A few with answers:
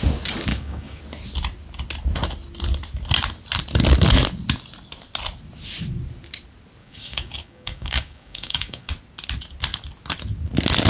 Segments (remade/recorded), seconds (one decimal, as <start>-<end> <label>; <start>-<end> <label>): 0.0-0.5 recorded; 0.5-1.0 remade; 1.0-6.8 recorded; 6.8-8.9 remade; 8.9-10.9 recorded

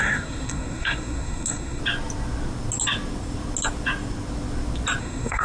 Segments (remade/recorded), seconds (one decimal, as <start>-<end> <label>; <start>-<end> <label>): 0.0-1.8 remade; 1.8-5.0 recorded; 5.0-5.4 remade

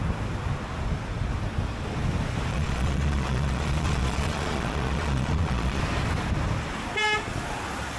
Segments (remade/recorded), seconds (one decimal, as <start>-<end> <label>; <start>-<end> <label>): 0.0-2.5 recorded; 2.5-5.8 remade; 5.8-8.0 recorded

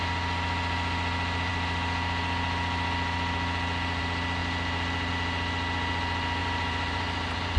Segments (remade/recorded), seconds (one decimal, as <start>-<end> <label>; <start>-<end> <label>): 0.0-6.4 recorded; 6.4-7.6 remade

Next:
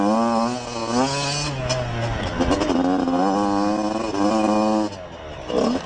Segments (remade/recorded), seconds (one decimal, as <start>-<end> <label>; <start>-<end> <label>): 0.0-5.9 recorded

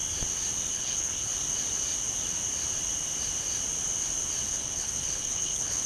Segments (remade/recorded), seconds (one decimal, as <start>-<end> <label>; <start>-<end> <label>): 0.0-0.7 recorded; 0.7-1.3 remade; 1.3-4.5 recorded; 4.5-5.9 remade